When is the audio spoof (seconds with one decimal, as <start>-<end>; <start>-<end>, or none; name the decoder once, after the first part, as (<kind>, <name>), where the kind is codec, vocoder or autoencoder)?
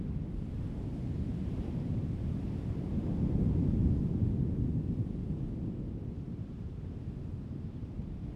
1.3-3.3 (vocoder, BigVGAN v2); 3.8-6.7